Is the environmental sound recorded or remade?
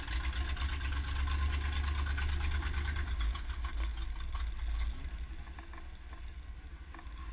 recorded